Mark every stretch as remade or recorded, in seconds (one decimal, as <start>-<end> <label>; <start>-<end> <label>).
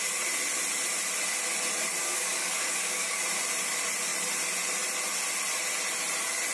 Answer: 0.0-2.0 recorded; 2.0-3.2 remade; 3.2-6.5 recorded